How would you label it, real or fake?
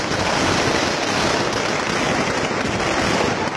real